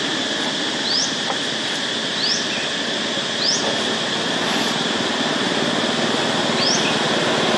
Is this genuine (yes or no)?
yes